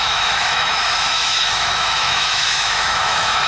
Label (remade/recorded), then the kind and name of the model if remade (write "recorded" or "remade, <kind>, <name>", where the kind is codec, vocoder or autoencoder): remade, autoencoder, DAC-VAE